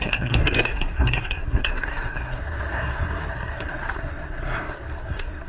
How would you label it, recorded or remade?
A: remade